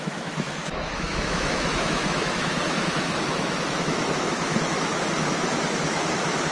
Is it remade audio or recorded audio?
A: remade